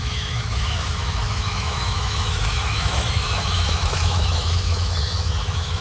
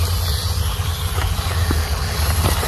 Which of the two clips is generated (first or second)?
first